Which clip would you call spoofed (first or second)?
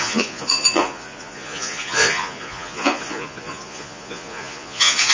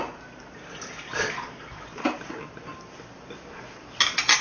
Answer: first